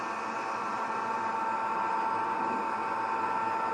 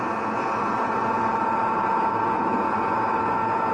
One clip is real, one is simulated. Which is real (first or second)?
first